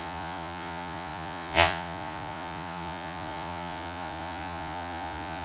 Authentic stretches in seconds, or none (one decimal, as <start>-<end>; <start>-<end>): none